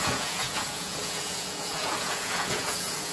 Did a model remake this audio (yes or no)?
yes